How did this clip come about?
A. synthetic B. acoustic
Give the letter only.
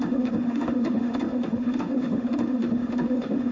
A